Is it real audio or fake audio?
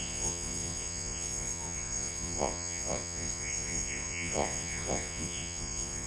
fake